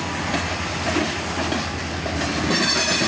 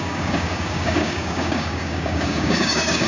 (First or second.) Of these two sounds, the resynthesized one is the second